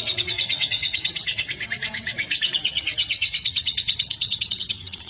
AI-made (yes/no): yes